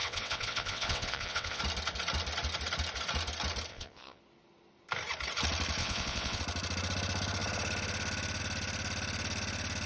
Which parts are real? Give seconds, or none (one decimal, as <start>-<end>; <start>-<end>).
1.6-3.7; 4.2-5.8; 6.4-9.9